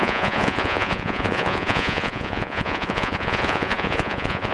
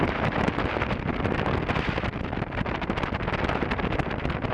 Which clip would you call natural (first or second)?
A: second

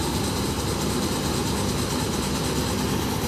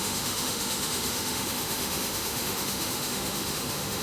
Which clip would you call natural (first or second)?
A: first